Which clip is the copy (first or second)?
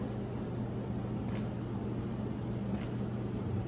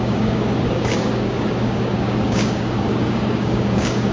second